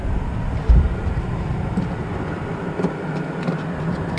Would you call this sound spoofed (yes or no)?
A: no